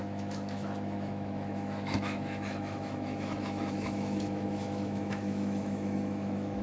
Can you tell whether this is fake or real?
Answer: fake